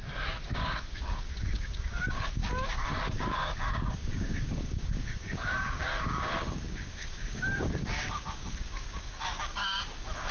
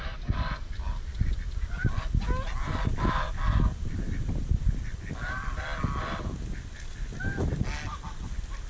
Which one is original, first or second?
second